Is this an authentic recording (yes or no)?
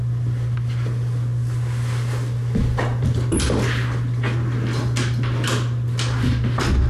yes